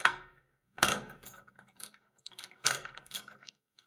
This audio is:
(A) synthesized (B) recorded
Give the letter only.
A